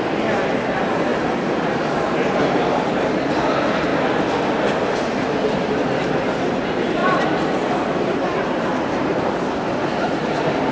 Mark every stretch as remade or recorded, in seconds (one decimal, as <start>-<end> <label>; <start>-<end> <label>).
0.0-1.1 recorded; 1.1-3.0 remade; 3.0-7.0 recorded; 7.0-9.3 remade; 9.3-10.7 recorded